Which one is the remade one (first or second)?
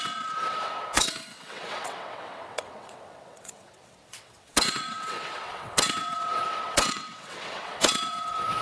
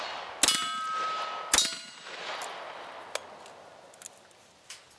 first